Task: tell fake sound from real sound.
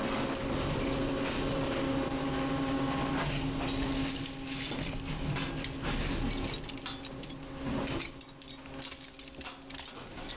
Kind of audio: real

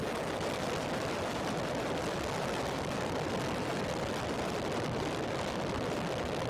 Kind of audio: real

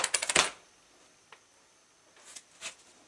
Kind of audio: real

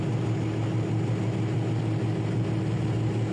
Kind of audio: real